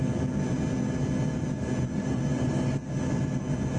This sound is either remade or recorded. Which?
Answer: recorded